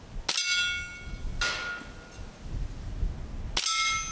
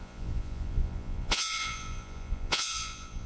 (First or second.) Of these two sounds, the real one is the first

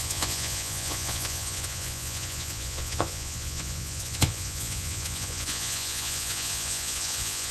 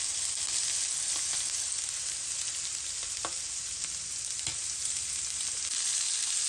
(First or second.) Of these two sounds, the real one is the second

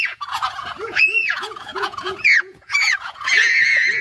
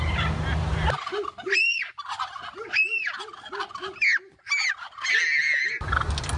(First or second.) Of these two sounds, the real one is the second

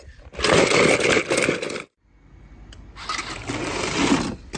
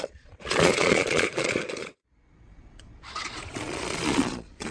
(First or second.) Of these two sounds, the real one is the first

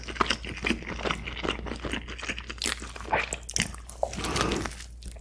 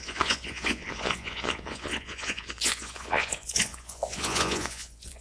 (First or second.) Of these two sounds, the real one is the first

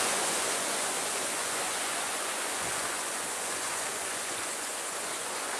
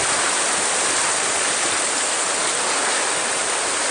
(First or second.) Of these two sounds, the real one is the second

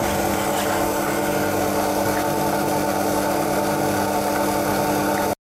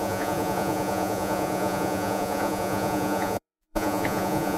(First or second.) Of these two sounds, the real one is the first